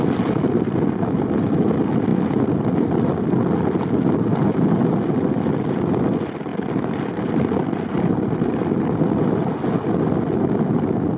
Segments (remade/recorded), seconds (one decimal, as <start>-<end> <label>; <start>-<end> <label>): 0.0-11.2 recorded